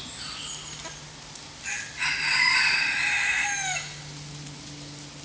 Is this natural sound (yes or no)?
yes